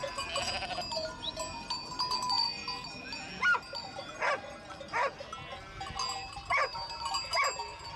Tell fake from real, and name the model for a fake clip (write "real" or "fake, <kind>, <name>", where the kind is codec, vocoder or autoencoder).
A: real